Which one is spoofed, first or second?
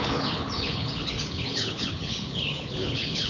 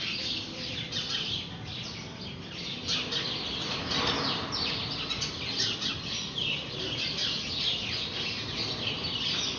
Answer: first